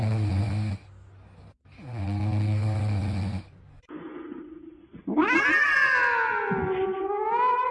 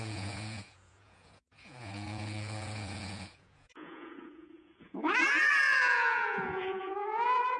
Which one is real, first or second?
first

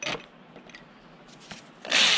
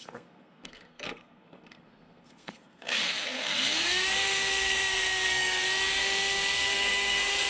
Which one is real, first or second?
first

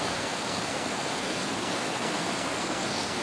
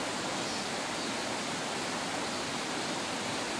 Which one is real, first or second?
second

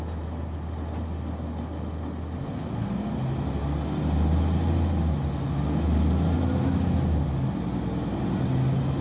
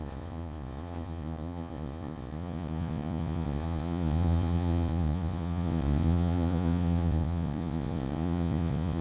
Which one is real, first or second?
first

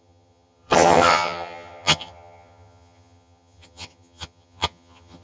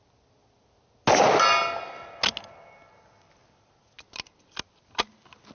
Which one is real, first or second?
second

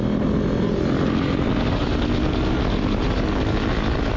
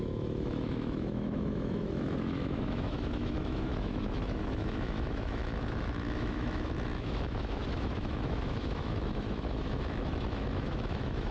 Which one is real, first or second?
first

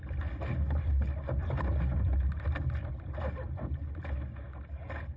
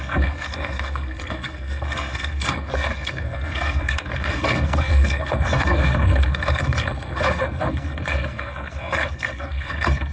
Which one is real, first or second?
first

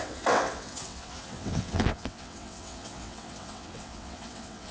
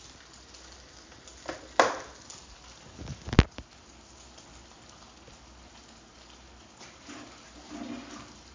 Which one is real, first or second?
second